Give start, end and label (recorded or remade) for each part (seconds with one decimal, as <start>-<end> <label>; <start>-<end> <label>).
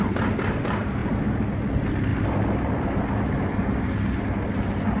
0.0-5.0 recorded